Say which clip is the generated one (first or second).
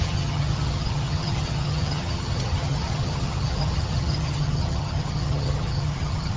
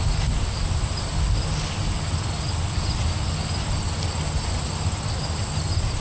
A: first